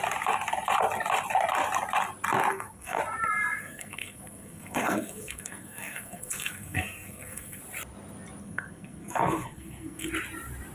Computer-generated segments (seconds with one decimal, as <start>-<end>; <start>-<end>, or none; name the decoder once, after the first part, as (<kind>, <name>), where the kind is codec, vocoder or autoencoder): 2.5-3.0 (codec, SNAC); 3.6-7.6; 8.4-10.1